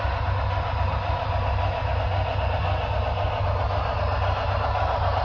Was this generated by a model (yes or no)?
no